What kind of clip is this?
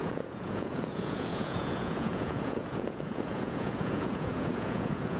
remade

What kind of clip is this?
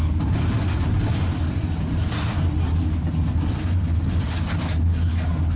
recorded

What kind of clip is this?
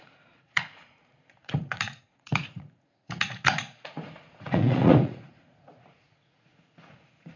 remade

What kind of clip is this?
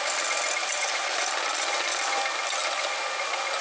recorded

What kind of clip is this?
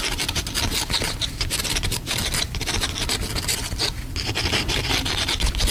recorded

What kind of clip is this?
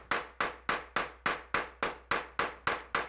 recorded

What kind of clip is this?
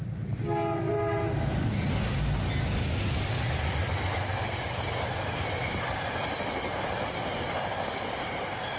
recorded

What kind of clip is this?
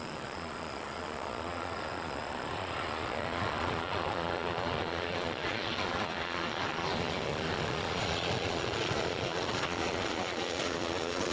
remade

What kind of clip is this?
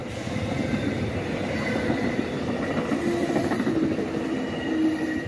recorded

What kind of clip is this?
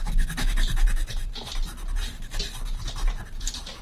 recorded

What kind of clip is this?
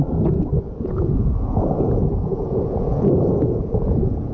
remade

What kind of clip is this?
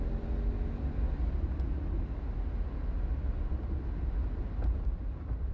recorded